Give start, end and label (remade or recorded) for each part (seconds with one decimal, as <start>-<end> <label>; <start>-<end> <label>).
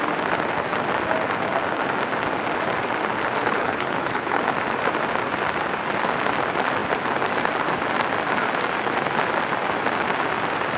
0.0-3.4 recorded; 3.4-4.4 remade; 4.4-10.8 recorded